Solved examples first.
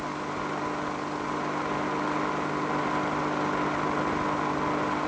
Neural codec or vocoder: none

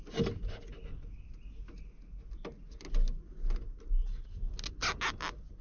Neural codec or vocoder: none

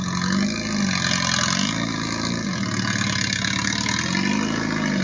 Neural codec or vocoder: none